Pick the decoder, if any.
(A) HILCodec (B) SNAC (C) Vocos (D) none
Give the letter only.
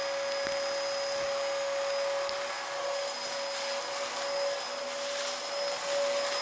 D